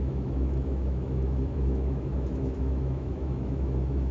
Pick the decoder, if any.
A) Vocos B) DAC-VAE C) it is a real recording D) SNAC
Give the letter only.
B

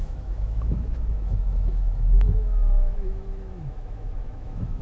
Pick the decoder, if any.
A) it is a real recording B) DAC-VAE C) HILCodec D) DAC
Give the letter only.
B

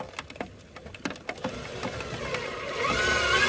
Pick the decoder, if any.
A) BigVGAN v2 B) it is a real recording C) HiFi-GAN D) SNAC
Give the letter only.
B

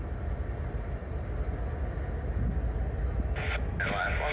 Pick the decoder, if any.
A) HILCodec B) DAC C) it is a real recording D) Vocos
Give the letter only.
C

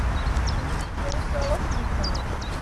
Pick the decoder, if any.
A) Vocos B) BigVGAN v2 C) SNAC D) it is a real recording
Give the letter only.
D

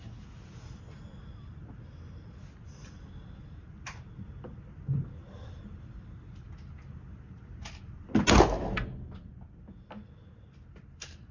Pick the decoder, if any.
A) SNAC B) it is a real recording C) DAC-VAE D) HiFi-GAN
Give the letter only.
B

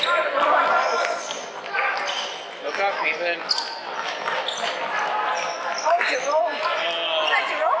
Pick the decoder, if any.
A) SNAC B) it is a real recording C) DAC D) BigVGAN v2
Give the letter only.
B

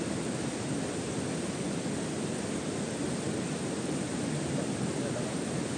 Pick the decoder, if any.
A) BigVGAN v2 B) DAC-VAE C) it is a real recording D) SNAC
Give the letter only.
C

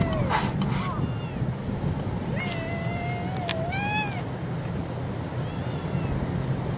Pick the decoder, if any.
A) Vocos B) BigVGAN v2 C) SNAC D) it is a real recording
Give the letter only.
D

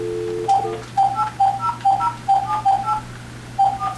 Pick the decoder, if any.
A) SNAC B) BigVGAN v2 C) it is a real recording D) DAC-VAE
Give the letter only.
C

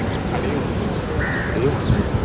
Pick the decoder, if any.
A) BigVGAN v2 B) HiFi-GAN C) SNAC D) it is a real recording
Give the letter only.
D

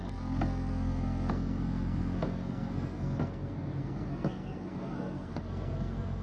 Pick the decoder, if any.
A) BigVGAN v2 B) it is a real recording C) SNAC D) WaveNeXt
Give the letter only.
C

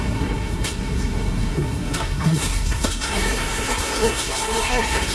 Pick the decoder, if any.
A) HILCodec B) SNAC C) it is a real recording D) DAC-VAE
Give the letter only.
B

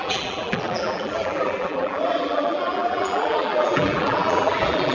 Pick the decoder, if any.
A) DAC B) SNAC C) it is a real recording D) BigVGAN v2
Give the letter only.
D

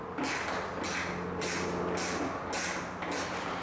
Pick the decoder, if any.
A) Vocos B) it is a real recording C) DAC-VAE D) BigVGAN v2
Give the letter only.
B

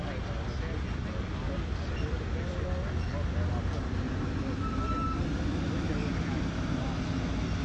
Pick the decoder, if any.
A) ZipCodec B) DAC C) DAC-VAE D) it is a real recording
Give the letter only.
D